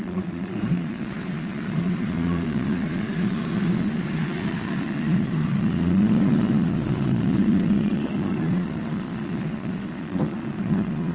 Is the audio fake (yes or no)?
yes